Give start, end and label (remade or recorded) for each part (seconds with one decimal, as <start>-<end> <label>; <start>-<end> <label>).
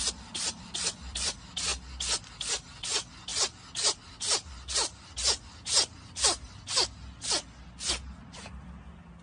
0.0-9.2 recorded